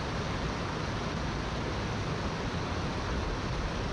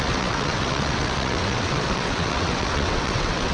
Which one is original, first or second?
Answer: first